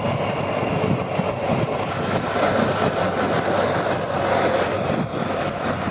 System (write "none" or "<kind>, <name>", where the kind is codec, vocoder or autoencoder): none